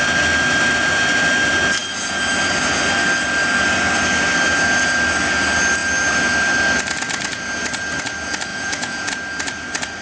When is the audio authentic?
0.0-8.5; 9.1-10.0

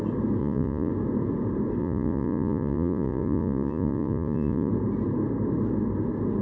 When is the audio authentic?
0.0-0.4; 0.9-1.8; 4.7-6.4

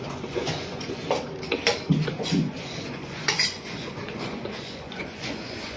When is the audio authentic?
1.0-1.9

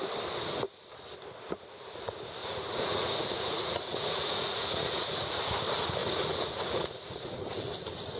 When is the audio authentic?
0.0-2.4; 5.5-6.0; 7.4-8.2

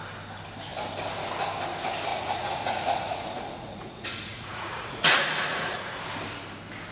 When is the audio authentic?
0.0-2.1; 5.8-6.9